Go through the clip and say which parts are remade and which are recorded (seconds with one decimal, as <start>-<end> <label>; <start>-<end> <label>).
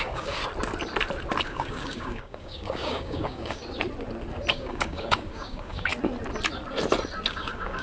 0.0-0.4 remade; 0.4-1.4 recorded; 1.4-3.6 remade; 3.6-4.5 recorded; 4.5-5.9 remade; 5.9-7.3 recorded; 7.3-7.8 remade